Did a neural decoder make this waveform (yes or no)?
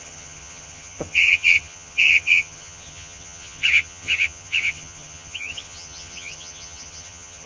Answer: yes